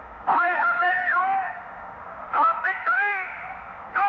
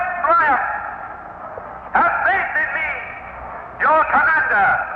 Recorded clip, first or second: second